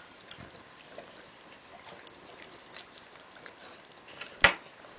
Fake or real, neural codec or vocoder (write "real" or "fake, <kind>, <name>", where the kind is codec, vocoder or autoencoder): real